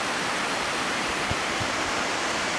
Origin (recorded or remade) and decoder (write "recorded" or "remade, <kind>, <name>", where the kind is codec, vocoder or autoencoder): remade, vocoder, BigVGAN v2